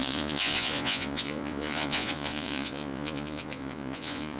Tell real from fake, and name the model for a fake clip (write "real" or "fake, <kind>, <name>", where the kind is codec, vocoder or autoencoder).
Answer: fake, vocoder, Vocos